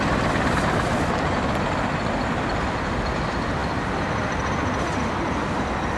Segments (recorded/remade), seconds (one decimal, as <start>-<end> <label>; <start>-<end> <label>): 0.0-6.0 recorded